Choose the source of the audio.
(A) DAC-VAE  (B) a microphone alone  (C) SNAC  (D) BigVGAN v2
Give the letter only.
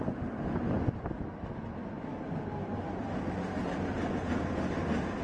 B